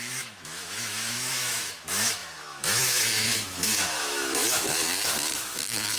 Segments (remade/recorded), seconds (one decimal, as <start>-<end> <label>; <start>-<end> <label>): 0.0-6.0 remade